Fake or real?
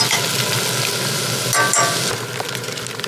real